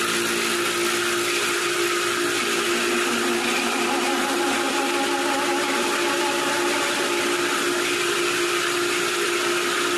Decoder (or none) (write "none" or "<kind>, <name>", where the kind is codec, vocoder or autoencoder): none